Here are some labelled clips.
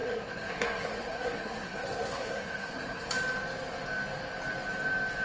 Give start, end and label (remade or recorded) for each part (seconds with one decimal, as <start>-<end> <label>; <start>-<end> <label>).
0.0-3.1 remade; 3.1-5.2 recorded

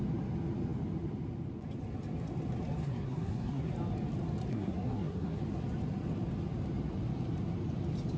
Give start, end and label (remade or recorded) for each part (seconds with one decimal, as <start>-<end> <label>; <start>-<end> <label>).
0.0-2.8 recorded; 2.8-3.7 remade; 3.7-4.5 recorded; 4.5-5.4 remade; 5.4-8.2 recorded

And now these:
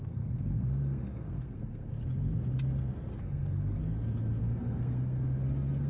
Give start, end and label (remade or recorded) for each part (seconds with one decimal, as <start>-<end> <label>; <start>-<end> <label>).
0.0-1.9 remade; 1.9-3.2 recorded; 3.2-3.8 remade; 3.8-4.4 recorded; 4.4-5.9 remade